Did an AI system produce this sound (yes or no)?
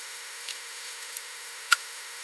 yes